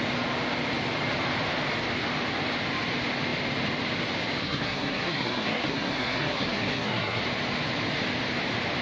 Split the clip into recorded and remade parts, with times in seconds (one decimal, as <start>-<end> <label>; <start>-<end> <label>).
0.0-4.4 recorded; 4.4-7.2 remade; 7.2-8.8 recorded